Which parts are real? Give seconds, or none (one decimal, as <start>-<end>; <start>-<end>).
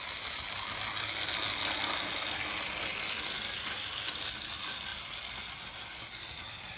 0.0-6.8